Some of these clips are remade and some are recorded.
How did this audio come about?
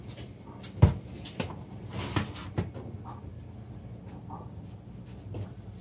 recorded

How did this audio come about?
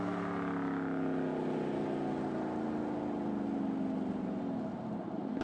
recorded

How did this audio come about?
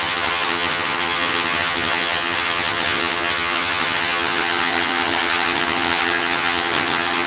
remade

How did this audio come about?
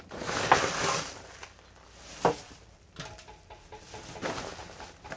recorded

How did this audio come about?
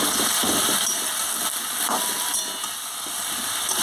recorded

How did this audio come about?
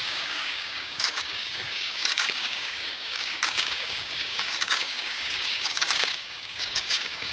remade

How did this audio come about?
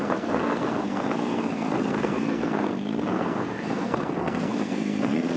remade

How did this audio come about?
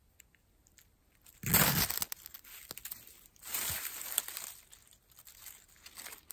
recorded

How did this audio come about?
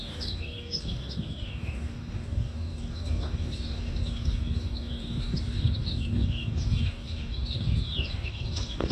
remade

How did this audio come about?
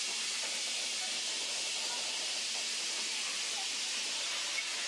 recorded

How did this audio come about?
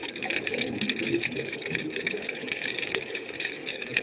remade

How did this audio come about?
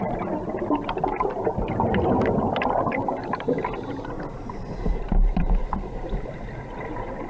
recorded